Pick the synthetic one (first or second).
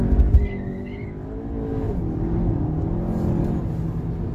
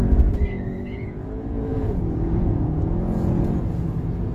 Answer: second